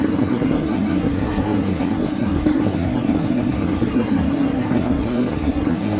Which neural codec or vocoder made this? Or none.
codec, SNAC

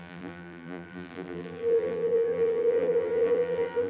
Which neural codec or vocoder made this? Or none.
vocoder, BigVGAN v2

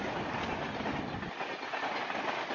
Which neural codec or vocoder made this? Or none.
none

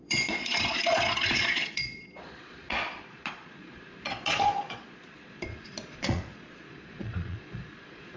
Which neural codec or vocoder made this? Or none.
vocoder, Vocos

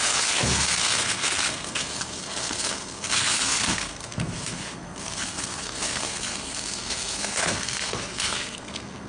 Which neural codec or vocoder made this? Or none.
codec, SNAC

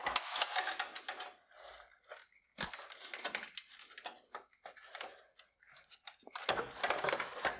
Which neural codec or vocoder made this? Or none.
none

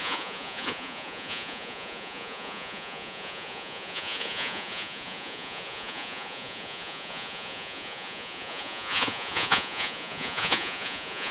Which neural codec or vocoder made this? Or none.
vocoder, Vocos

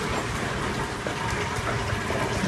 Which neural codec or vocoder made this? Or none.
none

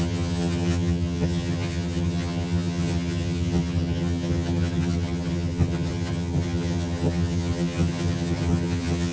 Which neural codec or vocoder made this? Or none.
vocoder, HiFi-GAN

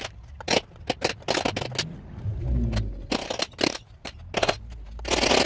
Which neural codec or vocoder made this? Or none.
none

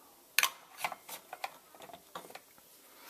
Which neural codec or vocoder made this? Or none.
none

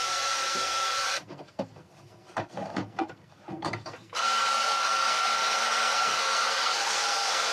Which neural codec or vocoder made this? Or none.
codec, SNAC